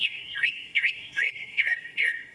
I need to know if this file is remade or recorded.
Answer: remade